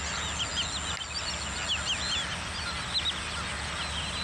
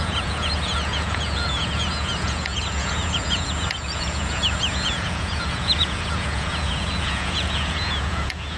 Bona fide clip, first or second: first